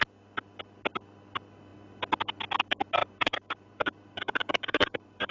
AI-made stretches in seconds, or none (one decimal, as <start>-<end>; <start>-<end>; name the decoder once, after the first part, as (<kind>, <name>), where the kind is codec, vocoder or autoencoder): 3.0-5.3 (vocoder, BigVGAN v2)